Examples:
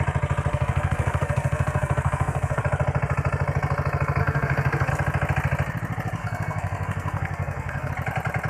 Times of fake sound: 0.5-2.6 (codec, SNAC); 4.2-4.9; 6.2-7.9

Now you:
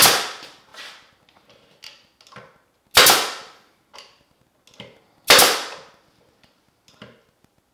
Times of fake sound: none